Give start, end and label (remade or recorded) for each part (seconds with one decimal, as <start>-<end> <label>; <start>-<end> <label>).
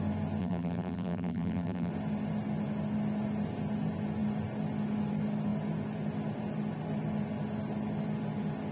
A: 0.0-0.4 recorded; 0.4-1.9 remade; 1.9-8.7 recorded